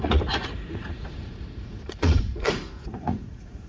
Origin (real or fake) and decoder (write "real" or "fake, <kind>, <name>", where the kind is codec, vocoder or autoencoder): fake, vocoder, Vocos